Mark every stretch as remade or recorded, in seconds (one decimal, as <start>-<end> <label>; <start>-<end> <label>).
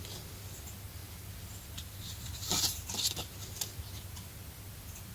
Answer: 0.0-5.1 recorded